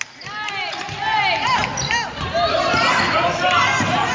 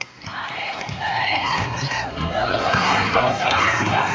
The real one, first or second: first